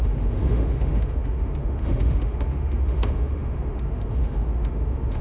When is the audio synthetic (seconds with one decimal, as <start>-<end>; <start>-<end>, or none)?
0.0-5.2